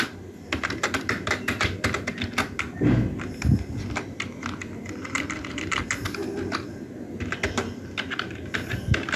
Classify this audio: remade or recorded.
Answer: recorded